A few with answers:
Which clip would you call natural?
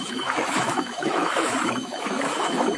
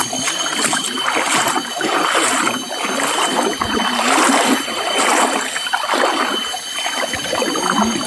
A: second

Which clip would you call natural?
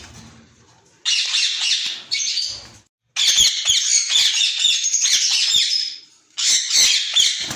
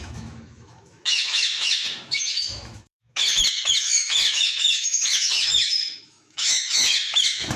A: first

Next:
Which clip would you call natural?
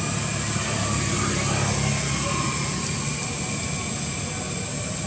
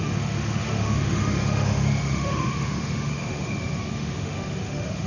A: first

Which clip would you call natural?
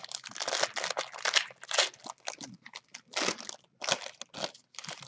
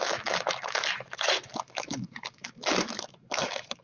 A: first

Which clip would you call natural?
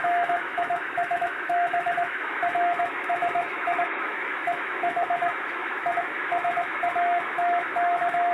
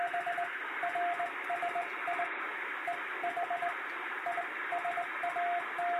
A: second